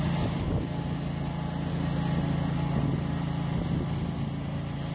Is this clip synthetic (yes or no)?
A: no